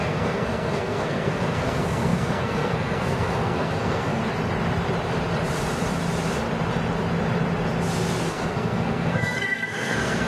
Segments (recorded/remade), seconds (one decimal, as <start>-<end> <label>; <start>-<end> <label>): 0.0-4.2 remade; 4.2-8.3 recorded; 8.3-10.3 remade